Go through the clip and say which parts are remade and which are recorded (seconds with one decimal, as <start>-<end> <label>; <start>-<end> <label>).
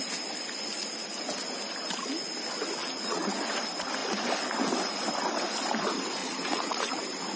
0.0-2.8 recorded; 2.8-3.4 remade; 3.4-6.2 recorded; 6.2-7.0 remade; 7.0-7.4 recorded